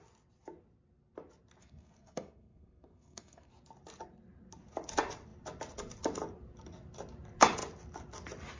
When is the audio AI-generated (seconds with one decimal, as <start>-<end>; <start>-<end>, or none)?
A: 1.6-3.5